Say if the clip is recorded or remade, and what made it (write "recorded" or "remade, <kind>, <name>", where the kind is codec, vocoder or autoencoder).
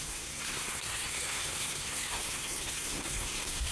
remade, codec, SNAC